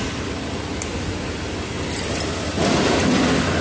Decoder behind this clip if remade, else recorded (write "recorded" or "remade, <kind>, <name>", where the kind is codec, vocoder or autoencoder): recorded